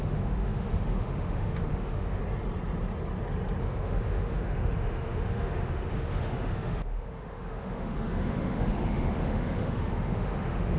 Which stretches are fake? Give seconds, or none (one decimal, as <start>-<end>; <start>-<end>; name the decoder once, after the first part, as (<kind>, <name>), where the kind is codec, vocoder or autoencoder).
0.0-2.2 (autoencoder, DAC-VAE); 3.6-10.8

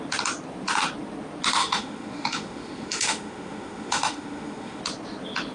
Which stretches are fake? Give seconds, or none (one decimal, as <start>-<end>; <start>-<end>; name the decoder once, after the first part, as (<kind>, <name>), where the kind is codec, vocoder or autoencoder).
1.6-4.8 (autoencoder, DAC-VAE)

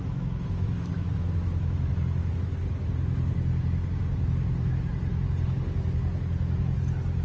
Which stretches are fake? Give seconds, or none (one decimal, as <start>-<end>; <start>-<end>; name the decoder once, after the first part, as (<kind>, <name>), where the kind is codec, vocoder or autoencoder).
0.0-1.9 (autoencoder, DAC-VAE)